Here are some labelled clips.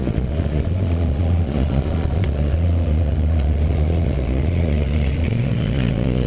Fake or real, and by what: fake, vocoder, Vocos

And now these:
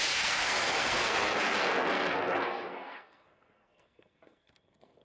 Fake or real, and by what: fake, codec, SNAC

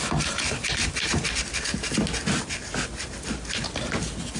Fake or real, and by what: real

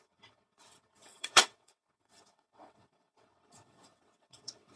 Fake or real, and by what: fake, vocoder, WaveNeXt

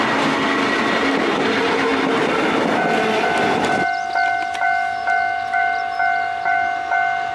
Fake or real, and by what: real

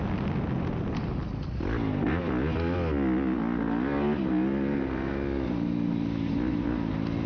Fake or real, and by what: real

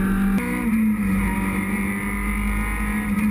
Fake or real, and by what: real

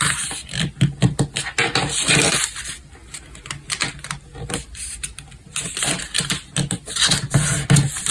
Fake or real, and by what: real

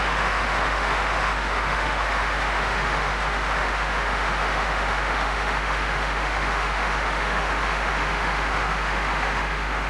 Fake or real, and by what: fake, autoencoder, DAC-VAE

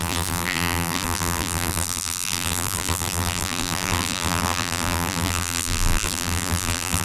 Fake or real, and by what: fake, vocoder, BigVGAN v2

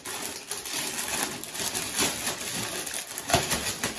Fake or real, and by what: real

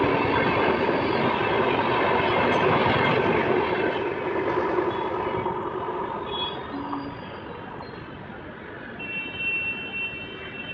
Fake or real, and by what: real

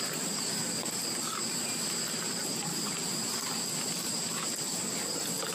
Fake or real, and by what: real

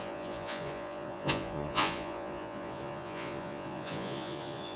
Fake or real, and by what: fake, vocoder, Vocos